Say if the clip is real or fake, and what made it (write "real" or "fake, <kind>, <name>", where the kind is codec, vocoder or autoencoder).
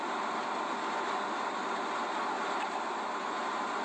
real